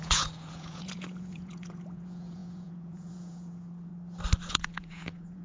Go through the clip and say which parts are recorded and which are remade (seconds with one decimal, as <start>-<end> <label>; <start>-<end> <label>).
0.0-3.9 remade; 3.9-4.5 recorded; 4.5-5.4 remade